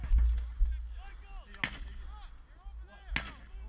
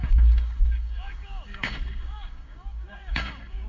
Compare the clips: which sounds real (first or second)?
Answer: first